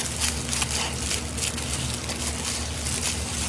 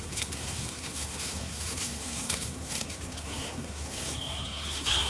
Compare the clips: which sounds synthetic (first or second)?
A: second